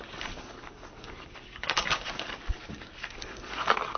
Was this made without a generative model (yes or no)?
no